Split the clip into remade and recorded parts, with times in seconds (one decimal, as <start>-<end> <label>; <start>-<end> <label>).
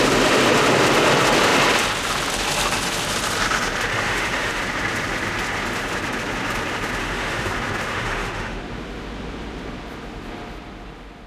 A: 0.0-3.9 recorded; 3.9-4.6 remade; 4.6-7.0 recorded; 7.0-7.5 remade; 7.5-7.9 recorded; 7.9-8.6 remade; 8.6-11.3 recorded